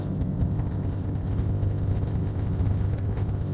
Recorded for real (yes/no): no